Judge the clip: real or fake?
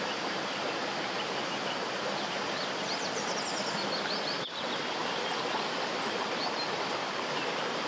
real